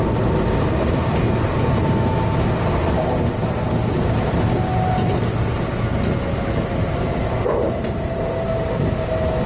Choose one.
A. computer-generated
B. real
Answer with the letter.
B